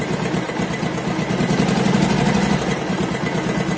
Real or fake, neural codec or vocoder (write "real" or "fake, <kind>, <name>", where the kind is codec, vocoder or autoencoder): real